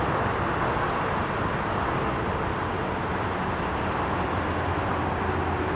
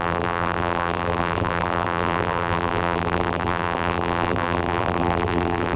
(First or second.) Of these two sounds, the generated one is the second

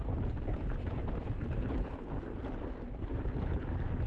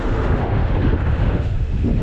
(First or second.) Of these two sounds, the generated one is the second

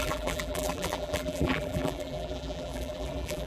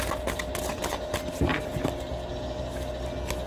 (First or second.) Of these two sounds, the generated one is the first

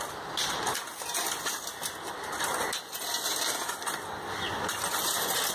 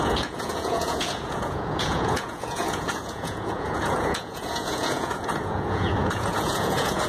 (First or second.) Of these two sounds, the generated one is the second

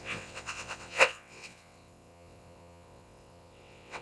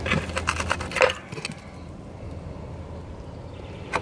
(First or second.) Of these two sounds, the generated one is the first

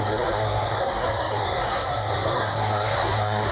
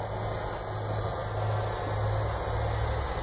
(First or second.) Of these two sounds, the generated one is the first